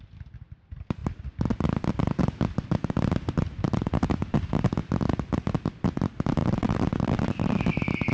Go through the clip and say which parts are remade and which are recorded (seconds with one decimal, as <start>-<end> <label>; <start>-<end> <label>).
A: 0.0-6.4 recorded; 6.4-7.6 remade; 7.6-8.1 recorded